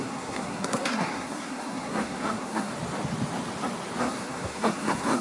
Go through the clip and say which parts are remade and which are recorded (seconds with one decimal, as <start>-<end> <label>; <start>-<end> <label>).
0.0-2.7 remade; 2.7-4.0 recorded; 4.0-5.2 remade